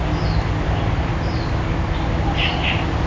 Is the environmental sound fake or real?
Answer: real